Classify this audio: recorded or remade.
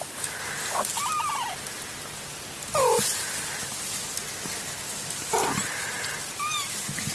recorded